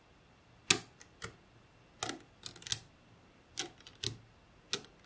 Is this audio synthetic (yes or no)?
no